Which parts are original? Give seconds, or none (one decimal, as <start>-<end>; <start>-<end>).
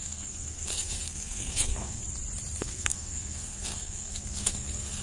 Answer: 2.0-2.6